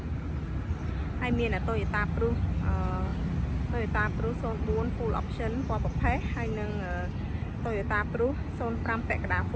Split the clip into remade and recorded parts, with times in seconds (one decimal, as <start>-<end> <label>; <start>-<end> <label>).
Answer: 0.0-9.6 recorded

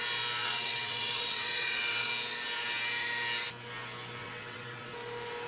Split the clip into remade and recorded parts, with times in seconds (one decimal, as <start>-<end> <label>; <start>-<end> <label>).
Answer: 0.0-0.4 recorded; 0.4-2.1 remade; 2.1-4.2 recorded; 4.2-4.9 remade; 4.9-5.5 recorded

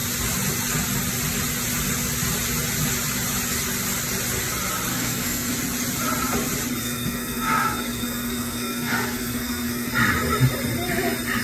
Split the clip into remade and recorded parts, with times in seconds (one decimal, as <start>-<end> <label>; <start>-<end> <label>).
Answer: 0.0-4.9 recorded; 4.9-5.5 remade; 5.5-6.8 recorded; 6.8-9.9 remade; 9.9-11.4 recorded

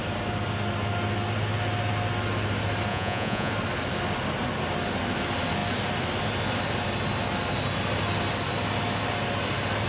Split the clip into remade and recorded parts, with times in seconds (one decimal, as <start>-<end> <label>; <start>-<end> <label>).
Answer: 0.0-2.9 recorded; 2.9-3.5 remade; 3.5-9.9 recorded

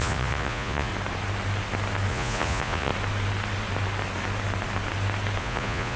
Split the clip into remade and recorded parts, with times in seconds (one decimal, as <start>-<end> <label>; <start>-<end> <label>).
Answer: 0.0-0.9 remade; 0.9-2.1 recorded; 2.1-2.9 remade; 2.9-5.4 recorded; 5.4-6.0 remade

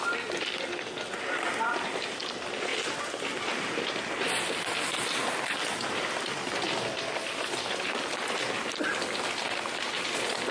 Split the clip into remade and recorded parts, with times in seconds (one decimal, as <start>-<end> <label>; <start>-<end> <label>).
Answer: 0.0-10.5 recorded

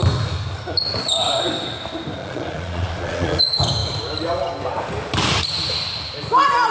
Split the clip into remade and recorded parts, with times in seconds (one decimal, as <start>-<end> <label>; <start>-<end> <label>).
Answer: 0.0-2.2 recorded; 2.2-3.4 remade; 3.4-6.7 recorded